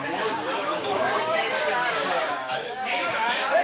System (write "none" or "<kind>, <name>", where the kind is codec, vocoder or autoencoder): codec, DAC